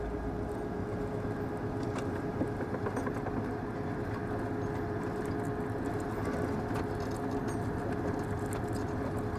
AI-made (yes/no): no